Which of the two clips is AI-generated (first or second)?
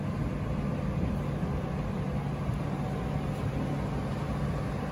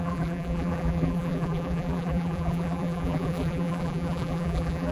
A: second